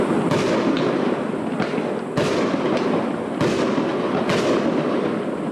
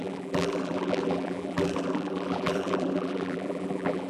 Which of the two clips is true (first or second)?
first